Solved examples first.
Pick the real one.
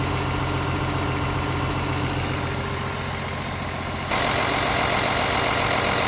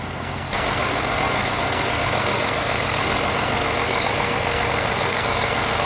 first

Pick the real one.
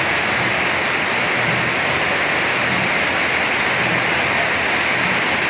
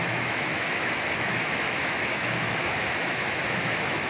first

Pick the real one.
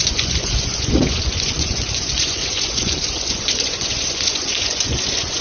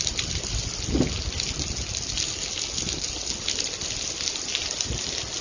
second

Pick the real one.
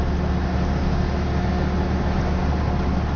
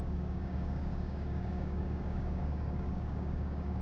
first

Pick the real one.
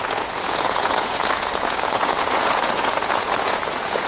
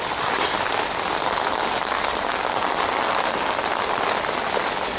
second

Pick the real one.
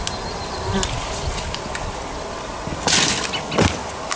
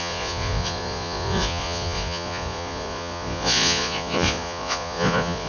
first